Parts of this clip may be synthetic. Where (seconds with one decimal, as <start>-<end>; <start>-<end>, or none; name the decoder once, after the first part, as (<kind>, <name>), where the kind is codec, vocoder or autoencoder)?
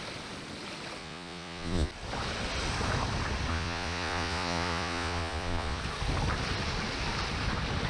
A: 1.0-1.9 (vocoder, Vocos); 3.5-5.8